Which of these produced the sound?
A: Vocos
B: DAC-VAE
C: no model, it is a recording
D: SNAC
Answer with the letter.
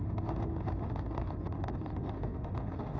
B